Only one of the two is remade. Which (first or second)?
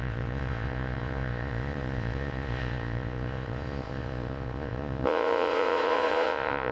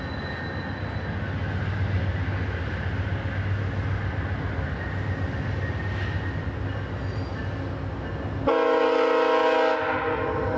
first